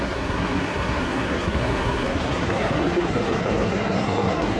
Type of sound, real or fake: fake